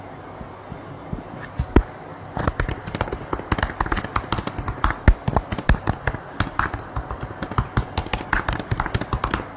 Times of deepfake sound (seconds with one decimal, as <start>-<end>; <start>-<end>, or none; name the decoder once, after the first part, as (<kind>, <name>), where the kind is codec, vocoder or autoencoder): none